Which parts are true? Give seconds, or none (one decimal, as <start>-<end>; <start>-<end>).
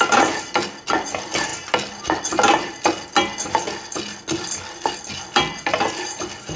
0.0-6.6